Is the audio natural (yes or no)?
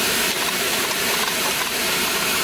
no